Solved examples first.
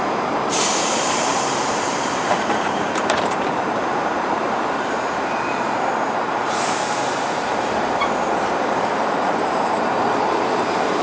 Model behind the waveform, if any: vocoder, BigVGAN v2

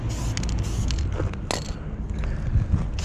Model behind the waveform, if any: none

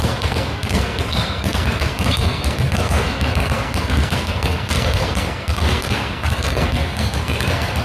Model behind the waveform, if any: codec, SNAC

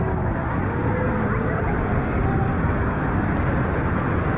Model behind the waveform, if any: none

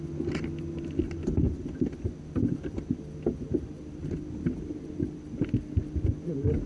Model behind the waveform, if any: none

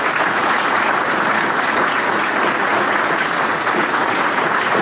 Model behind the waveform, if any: vocoder, Vocos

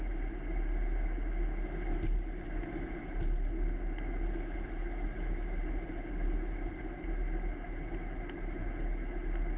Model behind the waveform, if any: none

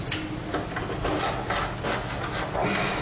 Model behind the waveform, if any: none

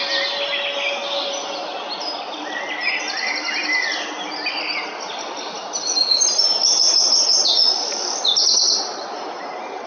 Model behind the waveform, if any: none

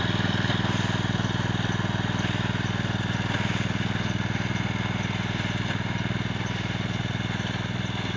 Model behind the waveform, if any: none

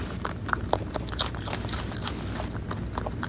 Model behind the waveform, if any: none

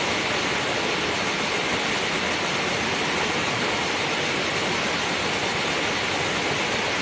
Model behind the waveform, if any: none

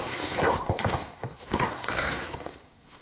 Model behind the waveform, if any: codec, SNAC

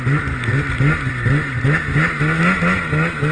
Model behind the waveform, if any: none